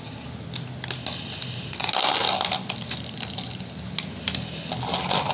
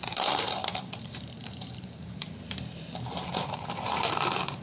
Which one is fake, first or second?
second